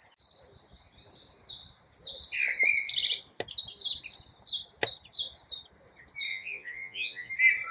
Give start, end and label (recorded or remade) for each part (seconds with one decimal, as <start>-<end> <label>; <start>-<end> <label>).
0.0-6.3 recorded; 6.3-7.3 remade; 7.3-7.7 recorded